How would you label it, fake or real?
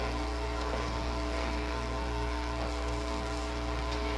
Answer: fake